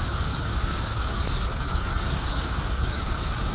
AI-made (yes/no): yes